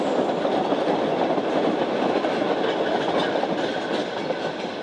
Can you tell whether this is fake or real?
real